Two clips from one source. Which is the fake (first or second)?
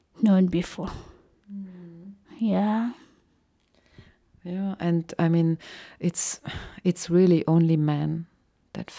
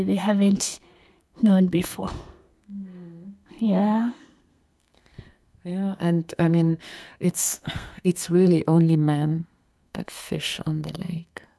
second